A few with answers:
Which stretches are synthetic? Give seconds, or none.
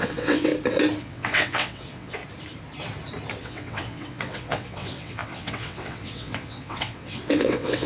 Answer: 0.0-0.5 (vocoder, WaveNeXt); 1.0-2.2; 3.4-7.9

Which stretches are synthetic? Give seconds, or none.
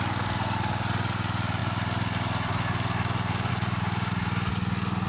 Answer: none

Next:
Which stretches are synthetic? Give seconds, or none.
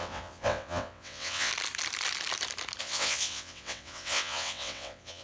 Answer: 0.0-1.5 (vocoder, WaveNeXt); 2.8-5.2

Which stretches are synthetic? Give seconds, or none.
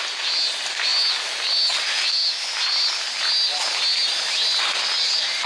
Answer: none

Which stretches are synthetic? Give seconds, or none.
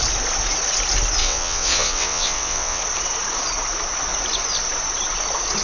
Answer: 1.2-2.8 (vocoder, WaveNeXt)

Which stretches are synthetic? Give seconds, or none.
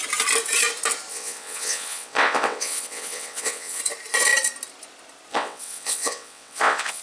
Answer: 1.1-3.8 (vocoder, WaveNeXt); 5.3-7.0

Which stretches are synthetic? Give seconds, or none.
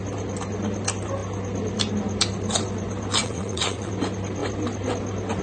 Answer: 3.2-3.9 (vocoder, WaveNeXt)